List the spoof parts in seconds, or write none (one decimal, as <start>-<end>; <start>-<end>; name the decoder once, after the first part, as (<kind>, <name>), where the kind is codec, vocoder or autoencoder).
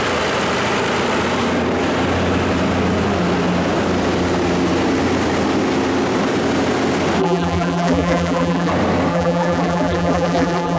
7.2-8.7 (vocoder, BigVGAN v2); 9.1-10.8